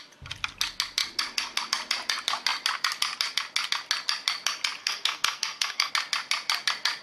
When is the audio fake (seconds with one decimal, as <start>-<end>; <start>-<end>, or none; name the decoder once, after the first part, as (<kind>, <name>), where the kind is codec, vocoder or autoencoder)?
4.8-5.9 (codec, SNAC)

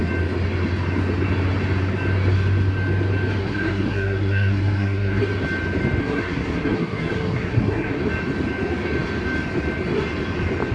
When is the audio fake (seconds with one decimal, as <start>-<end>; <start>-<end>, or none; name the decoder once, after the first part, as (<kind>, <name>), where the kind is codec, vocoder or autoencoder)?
3.4-5.2 (codec, SNAC); 6.0-8.0

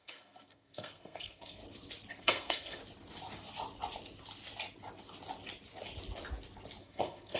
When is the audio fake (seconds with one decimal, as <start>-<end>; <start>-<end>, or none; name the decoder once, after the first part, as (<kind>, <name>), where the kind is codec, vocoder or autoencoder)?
0.0-1.6 (codec, SNAC); 2.1-2.8; 6.8-7.4

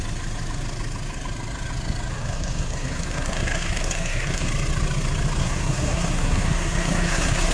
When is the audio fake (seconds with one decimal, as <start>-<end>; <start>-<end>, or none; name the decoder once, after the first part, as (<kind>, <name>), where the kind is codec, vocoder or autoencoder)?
2.1-4.5 (codec, SNAC); 5.4-7.5

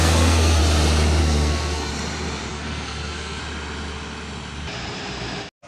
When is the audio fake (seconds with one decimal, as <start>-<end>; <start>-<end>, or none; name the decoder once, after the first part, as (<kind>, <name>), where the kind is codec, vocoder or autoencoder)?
0.0-0.6 (codec, SNAC); 1.2-1.9; 2.5-3.4

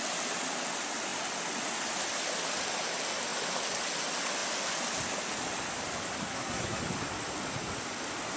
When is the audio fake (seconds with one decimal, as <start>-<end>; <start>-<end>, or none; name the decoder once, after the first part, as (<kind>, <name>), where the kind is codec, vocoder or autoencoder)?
6.3-6.8 (codec, SNAC)